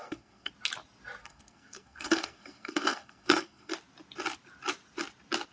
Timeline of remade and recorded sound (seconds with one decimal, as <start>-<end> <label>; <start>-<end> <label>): 0.0-0.5 remade; 0.5-1.2 recorded; 1.2-3.7 remade; 3.7-5.5 recorded

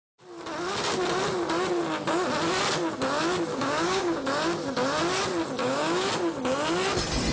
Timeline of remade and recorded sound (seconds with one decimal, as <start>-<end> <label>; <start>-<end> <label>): 0.0-3.5 recorded; 3.5-4.3 remade; 4.3-5.6 recorded; 5.6-6.1 remade; 6.1-7.3 recorded

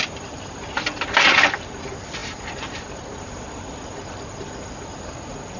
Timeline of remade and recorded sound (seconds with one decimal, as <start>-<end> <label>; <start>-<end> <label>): 0.0-5.6 recorded